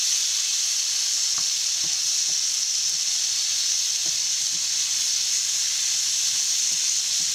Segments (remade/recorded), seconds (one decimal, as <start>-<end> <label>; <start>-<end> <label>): 0.0-7.3 recorded